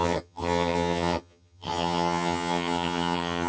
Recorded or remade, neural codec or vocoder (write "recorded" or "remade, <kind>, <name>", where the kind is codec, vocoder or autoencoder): remade, vocoder, HiFi-GAN